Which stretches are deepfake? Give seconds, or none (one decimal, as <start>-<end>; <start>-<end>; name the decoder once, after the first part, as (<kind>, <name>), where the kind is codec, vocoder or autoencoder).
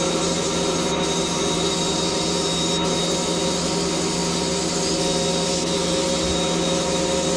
none